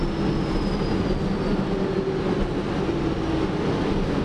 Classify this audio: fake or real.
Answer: real